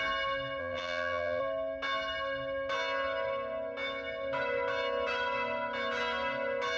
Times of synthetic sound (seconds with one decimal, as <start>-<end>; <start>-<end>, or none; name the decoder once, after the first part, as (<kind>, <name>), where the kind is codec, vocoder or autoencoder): 0.6-1.4 (vocoder, BigVGAN v2)